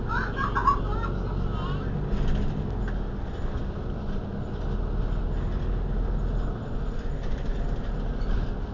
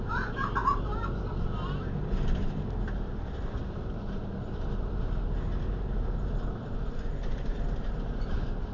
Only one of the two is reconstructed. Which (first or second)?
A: second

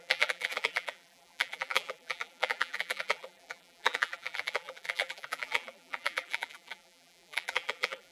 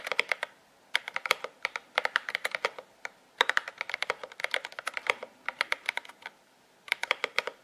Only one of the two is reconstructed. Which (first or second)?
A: first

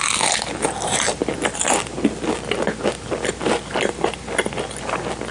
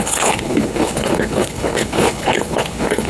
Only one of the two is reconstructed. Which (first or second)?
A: second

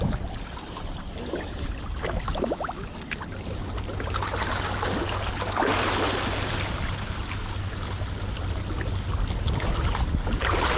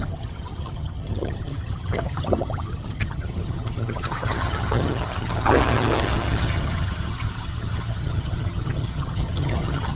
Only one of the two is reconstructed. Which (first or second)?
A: second